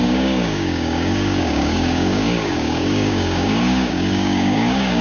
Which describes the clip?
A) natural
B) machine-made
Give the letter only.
B